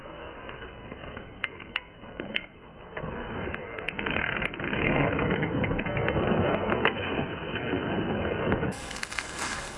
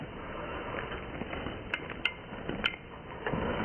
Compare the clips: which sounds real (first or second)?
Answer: second